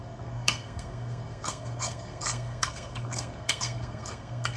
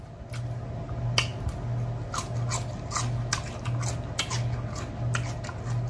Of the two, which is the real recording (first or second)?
second